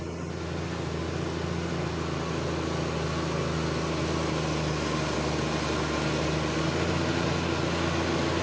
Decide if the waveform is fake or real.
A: real